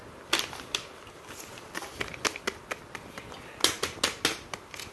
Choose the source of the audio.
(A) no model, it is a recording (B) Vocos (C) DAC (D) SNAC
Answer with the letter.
A